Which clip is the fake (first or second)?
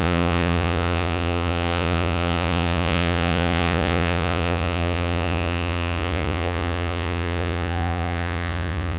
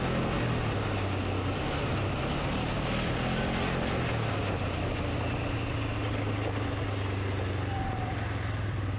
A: first